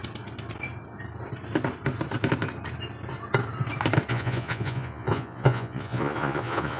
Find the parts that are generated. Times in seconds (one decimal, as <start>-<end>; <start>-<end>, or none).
4.1-6.8